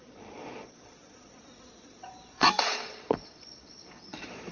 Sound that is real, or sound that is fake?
fake